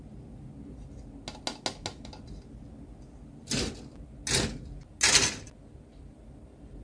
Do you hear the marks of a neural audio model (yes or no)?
no